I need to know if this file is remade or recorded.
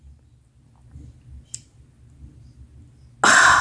recorded